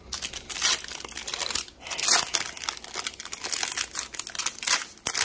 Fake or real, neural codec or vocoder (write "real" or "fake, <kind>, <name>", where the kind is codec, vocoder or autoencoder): real